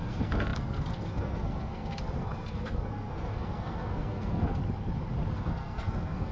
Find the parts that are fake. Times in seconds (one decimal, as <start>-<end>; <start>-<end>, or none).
0.0-4.6; 5.3-6.3